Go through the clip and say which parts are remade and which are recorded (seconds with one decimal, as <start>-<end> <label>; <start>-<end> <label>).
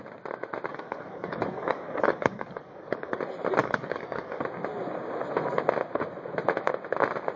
0.0-0.7 recorded; 0.7-3.2 remade; 3.2-3.6 recorded; 3.6-4.4 remade; 4.4-7.4 recorded